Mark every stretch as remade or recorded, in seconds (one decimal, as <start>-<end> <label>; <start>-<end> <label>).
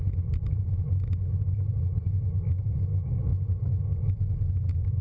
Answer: 0.0-5.0 recorded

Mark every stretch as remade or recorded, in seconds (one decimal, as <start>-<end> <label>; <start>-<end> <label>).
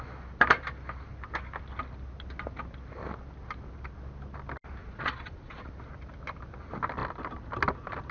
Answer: 0.0-4.8 recorded; 4.8-5.7 remade; 5.7-8.1 recorded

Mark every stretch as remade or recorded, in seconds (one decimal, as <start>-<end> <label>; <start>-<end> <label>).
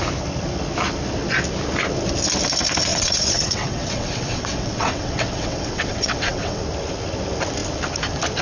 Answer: 0.0-2.9 recorded; 2.9-6.6 remade; 6.6-8.4 recorded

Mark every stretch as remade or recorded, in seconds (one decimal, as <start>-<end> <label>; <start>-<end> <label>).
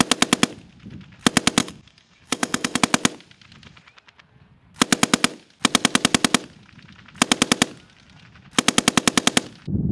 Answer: 0.0-1.6 recorded; 1.6-2.8 remade; 2.8-9.9 recorded